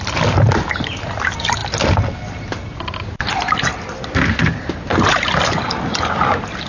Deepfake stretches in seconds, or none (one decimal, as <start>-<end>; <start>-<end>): none